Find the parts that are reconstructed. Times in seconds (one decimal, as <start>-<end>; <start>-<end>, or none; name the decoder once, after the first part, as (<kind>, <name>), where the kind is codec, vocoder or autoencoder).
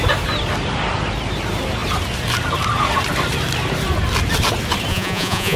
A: 4.9-5.6 (vocoder, Vocos)